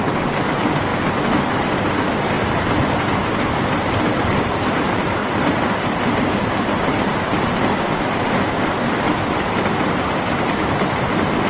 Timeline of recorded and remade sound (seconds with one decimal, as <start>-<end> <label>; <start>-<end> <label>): 0.0-11.5 remade